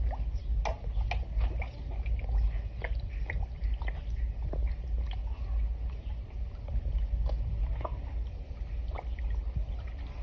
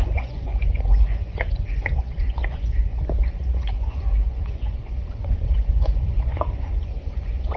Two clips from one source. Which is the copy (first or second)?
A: second